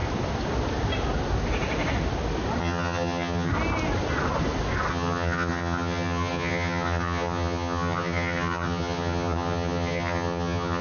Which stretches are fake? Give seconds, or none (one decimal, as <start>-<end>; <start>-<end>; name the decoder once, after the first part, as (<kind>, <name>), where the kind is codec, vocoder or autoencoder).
2.6-3.5 (vocoder, HiFi-GAN); 4.9-10.8